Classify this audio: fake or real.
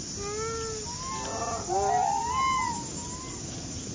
real